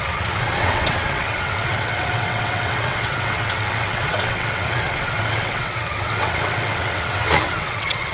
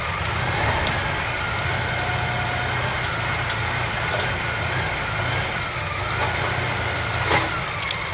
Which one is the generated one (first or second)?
first